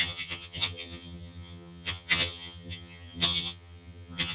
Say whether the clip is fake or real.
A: fake